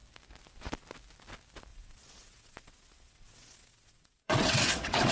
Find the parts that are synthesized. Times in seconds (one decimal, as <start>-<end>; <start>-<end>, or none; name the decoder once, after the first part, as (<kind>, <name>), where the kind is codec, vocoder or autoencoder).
1.7-5.1 (vocoder, WaveNeXt)